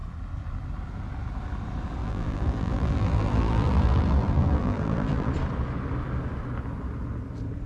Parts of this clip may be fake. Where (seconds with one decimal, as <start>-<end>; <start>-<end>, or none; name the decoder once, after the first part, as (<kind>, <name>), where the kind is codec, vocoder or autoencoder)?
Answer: 2.0-5.3 (vocoder, BigVGAN v2)